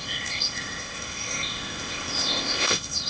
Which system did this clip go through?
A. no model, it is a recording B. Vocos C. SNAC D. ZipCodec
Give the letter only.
D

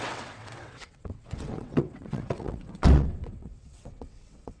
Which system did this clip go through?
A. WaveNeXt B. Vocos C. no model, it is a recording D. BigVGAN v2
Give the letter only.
A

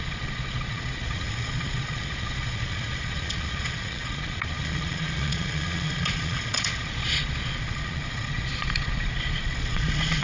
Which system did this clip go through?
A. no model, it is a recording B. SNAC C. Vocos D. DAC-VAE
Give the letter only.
C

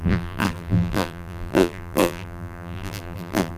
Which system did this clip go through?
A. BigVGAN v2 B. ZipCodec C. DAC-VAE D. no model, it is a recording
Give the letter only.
A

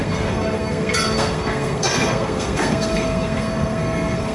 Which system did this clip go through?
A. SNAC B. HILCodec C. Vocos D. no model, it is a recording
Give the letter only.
A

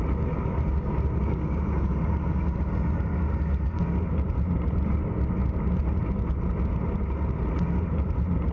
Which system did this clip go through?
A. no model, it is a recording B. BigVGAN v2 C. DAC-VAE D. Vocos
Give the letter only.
A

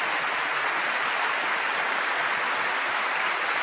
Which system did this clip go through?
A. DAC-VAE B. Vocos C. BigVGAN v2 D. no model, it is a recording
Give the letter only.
D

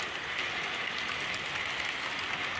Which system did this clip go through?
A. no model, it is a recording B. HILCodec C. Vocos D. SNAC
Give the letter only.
A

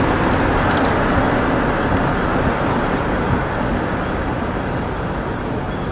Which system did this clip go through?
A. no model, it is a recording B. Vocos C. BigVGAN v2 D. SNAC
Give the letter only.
A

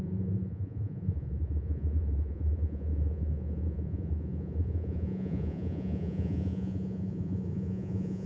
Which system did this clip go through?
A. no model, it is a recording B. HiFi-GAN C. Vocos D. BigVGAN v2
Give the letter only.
C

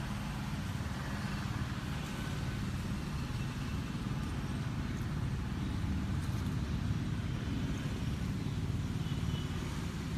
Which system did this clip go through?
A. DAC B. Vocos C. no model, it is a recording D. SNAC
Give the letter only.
C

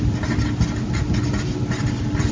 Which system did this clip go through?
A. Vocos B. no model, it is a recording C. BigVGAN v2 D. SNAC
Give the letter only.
B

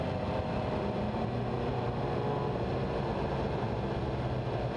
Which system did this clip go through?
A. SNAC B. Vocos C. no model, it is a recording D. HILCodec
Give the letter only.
C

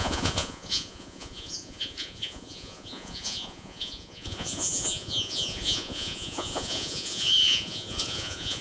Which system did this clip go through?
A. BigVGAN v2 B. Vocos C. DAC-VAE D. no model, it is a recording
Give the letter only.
B